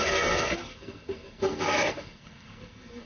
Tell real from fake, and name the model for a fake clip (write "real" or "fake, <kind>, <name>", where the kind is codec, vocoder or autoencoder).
fake, codec, SNAC